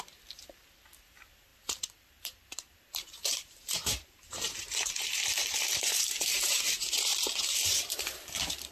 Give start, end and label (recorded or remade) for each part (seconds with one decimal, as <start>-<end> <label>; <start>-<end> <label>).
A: 0.0-8.7 remade